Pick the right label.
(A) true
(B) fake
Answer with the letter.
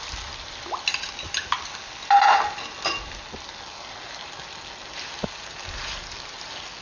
A